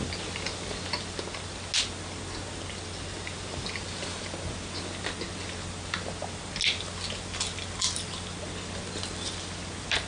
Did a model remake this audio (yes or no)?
no